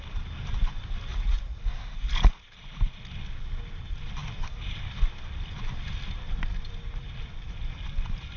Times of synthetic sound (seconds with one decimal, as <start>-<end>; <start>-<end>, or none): 1.1-1.6